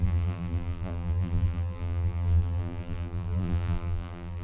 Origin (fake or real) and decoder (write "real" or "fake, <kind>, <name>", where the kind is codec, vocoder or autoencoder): fake, vocoder, BigVGAN v2